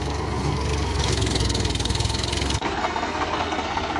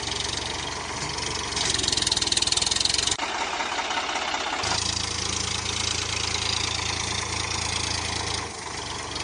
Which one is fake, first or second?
first